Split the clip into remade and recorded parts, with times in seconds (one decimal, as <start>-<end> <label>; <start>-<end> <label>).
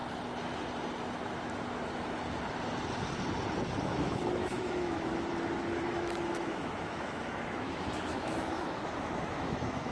0.0-3.8 recorded; 3.8-5.1 remade; 5.1-5.8 recorded; 5.8-9.9 remade